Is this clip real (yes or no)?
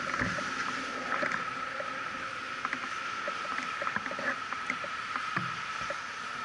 yes